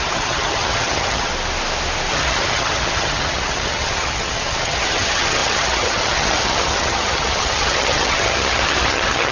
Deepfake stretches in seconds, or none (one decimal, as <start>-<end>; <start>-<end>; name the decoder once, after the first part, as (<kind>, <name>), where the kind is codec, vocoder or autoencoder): 0.0-1.3 (vocoder, HiFi-GAN); 2.1-9.3